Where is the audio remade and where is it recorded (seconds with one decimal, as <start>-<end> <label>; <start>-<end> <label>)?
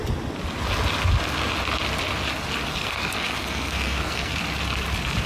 0.0-2.7 recorded; 2.7-4.4 remade; 4.4-5.3 recorded